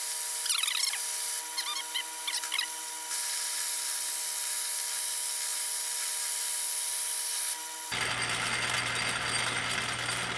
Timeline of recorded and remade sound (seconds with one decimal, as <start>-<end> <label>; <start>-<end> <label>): 0.0-10.4 recorded